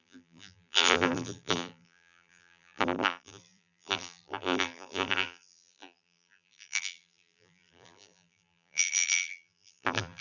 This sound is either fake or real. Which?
fake